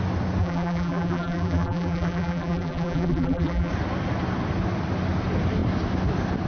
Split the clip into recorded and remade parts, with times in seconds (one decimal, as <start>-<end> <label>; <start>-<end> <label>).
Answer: 0.0-0.4 recorded; 0.4-3.7 remade; 3.7-6.5 recorded